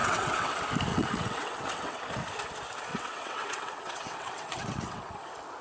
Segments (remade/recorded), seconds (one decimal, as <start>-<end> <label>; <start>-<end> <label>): 0.0-0.5 remade; 0.5-0.9 recorded; 0.9-2.0 remade; 2.0-2.9 recorded; 2.9-5.1 remade; 5.1-5.6 recorded